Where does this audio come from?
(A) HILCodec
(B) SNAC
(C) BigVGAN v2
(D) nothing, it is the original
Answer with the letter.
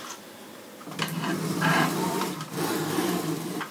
C